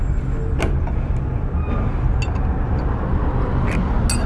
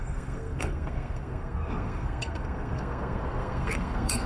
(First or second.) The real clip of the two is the first